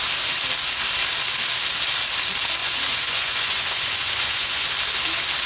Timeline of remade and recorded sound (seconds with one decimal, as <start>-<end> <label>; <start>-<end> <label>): 0.0-2.6 recorded; 2.6-4.7 remade; 4.7-5.5 recorded